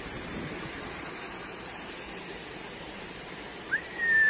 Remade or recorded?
remade